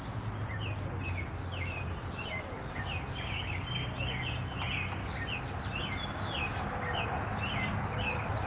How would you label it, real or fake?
real